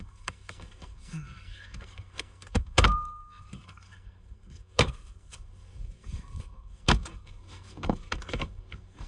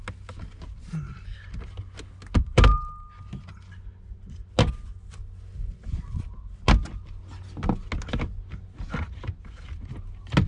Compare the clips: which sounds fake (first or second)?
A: first